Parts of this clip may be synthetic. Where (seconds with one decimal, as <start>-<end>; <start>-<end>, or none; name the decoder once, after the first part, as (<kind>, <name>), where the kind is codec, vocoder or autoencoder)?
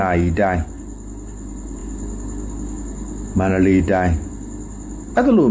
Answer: none